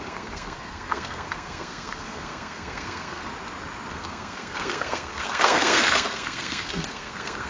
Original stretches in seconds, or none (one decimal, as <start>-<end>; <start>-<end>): 3.3-3.9